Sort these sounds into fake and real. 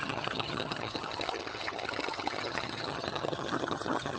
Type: fake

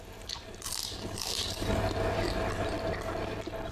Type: real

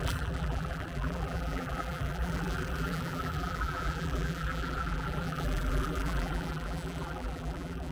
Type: fake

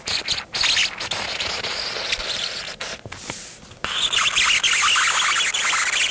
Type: real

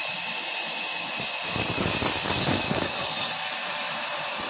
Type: real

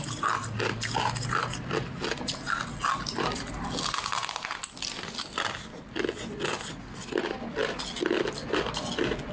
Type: real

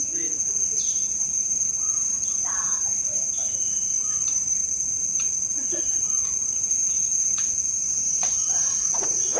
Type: fake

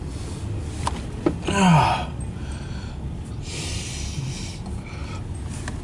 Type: real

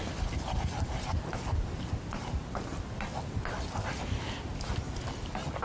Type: real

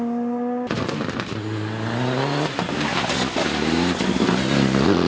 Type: real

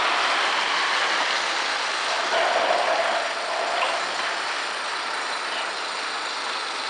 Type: real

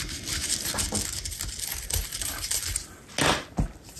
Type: real